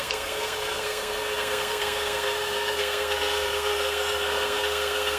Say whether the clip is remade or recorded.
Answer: remade